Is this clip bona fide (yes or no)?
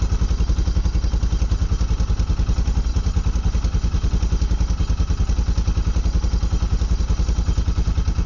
yes